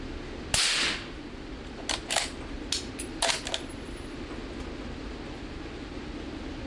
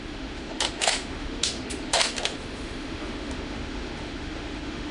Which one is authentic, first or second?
first